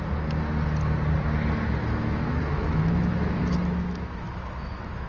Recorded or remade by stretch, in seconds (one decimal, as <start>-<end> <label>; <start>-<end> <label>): 0.0-1.8 recorded; 1.8-5.1 remade

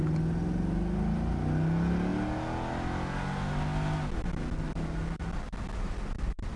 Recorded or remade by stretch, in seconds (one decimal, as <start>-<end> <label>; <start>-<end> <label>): 0.0-6.6 recorded

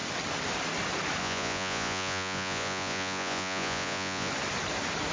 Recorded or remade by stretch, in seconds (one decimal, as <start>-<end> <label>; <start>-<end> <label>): 0.0-1.2 recorded; 1.2-4.3 remade; 4.3-5.1 recorded

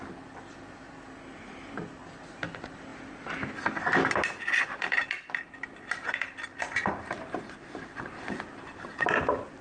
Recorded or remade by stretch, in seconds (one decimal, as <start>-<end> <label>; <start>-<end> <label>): 0.0-9.6 recorded

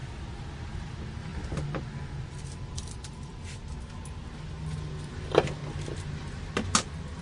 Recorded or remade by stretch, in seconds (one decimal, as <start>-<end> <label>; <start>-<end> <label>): 0.0-0.8 recorded; 0.8-3.6 remade; 3.6-5.1 recorded; 5.1-5.6 remade; 5.6-7.2 recorded